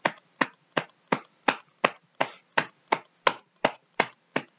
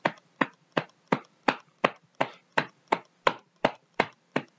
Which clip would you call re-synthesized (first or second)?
second